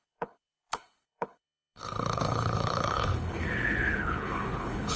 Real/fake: fake